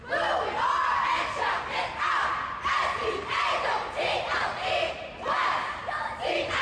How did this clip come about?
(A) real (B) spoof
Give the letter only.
A